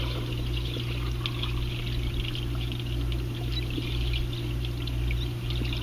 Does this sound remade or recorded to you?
recorded